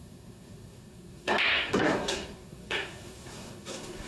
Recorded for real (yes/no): no